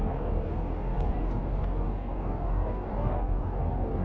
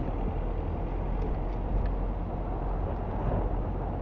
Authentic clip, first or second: second